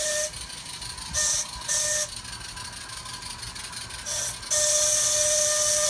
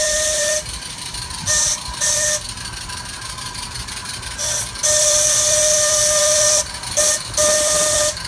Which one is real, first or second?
first